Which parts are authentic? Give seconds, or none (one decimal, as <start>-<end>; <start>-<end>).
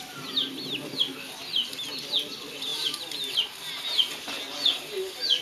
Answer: 0.0-5.4